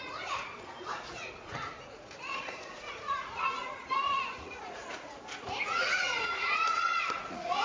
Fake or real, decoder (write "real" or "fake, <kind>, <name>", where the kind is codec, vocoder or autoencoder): fake, vocoder, Vocos